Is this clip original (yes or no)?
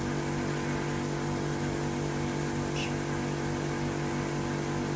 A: yes